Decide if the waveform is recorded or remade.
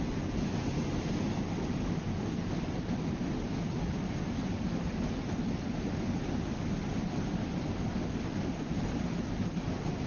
recorded